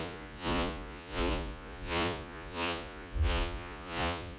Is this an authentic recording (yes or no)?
no